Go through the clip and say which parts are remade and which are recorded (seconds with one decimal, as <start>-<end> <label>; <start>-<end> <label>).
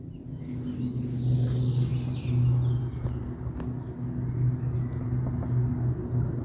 0.0-6.4 recorded